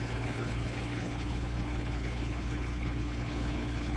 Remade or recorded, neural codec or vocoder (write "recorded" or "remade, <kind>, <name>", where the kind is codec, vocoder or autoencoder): remade, codec, HILCodec